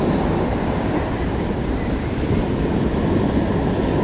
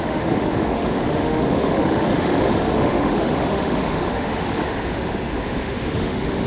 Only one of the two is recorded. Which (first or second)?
first